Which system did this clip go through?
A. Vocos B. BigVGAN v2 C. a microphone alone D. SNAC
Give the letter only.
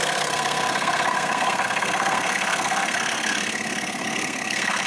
D